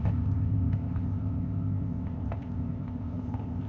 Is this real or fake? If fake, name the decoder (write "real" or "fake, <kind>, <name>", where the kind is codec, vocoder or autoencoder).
fake, codec, ZipCodec